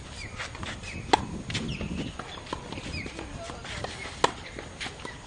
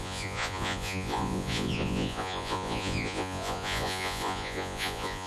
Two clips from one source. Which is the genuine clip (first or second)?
first